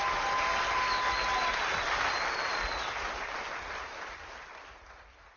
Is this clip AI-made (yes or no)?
no